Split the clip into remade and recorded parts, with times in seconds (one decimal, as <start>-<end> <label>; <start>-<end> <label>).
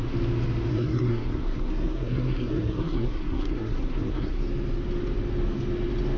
0.0-0.7 recorded; 0.7-4.4 remade; 4.4-6.2 recorded